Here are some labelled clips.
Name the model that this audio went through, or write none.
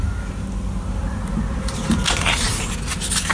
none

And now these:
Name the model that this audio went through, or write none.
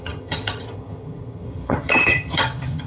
vocoder, HiFi-GAN